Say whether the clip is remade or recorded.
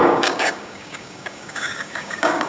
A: remade